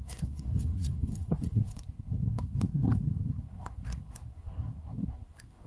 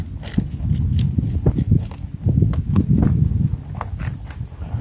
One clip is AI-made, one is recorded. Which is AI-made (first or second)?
first